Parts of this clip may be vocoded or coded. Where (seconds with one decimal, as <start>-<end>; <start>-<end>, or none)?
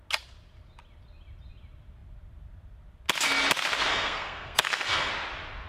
3.9-5.1